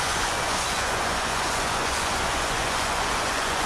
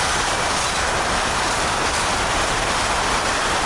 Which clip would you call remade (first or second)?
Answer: first